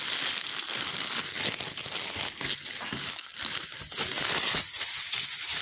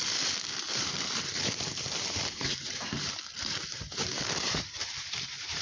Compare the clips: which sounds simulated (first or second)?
second